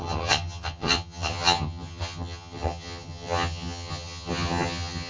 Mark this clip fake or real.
fake